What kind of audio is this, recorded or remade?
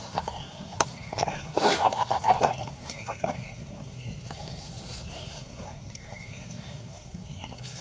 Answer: remade